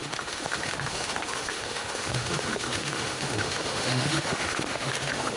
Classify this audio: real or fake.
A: fake